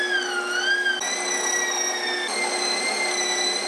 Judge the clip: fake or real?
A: real